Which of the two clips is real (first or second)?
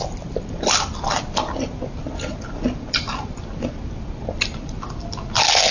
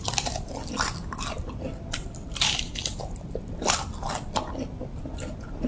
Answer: first